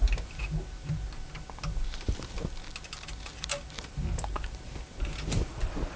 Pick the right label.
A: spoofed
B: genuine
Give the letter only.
B